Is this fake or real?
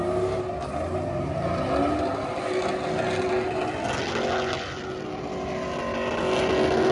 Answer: real